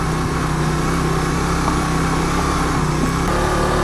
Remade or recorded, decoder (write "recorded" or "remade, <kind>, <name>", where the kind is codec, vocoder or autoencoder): recorded